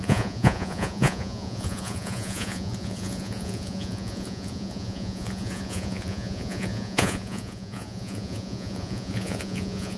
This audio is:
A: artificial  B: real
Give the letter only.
A